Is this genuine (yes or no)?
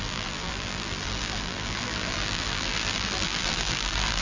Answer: no